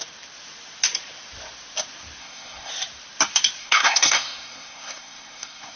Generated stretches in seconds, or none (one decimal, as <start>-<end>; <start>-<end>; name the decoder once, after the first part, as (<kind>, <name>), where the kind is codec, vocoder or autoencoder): 2.2-2.7 (codec, SNAC); 3.6-5.8